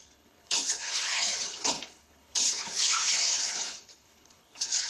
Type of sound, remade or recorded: remade